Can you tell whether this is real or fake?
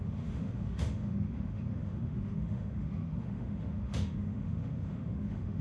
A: fake